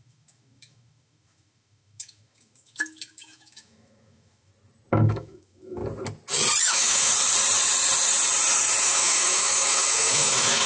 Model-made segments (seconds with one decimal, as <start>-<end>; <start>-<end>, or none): 0.0-4.5; 5.1-5.8; 6.6-7.1; 8.8-10.7